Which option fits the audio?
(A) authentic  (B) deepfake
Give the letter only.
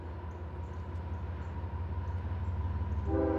A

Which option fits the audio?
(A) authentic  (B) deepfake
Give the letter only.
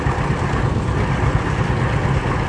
A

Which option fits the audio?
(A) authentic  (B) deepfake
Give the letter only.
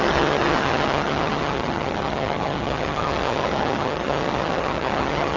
B